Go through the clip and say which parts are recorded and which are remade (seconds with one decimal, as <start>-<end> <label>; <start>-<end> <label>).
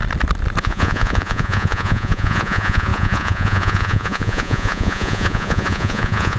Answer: 0.0-0.6 recorded; 0.6-6.4 remade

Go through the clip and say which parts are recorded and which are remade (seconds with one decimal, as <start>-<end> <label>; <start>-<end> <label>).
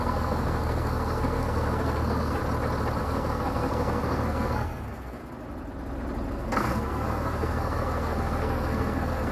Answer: 0.0-2.4 remade; 2.4-3.0 recorded; 3.0-5.2 remade; 5.2-6.3 recorded; 6.3-9.3 remade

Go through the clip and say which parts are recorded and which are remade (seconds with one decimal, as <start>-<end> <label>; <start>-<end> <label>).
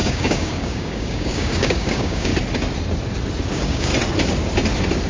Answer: 0.0-2.3 remade; 2.3-3.5 recorded; 3.5-3.9 remade; 3.9-5.1 recorded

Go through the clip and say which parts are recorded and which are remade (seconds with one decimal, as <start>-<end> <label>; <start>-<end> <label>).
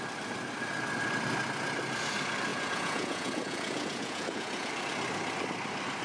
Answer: 0.0-2.5 recorded; 2.5-4.7 remade; 4.7-6.0 recorded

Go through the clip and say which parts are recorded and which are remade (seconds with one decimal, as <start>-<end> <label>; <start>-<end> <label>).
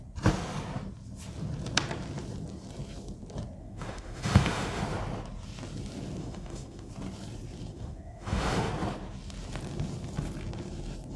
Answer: 0.0-3.6 recorded; 3.6-4.8 remade; 4.8-6.2 recorded; 6.2-6.9 remade; 6.9-7.7 recorded; 7.7-8.7 remade; 8.7-11.2 recorded